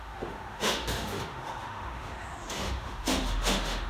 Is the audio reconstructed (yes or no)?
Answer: yes